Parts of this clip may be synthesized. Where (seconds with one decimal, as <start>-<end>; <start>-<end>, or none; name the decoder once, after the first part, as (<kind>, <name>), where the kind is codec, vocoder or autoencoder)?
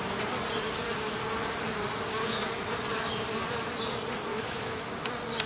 4.3-5.1 (autoencoder, DAC-VAE)